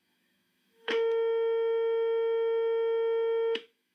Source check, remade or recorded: remade